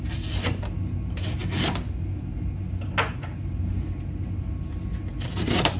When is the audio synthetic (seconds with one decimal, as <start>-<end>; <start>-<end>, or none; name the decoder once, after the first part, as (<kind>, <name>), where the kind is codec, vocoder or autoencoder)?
none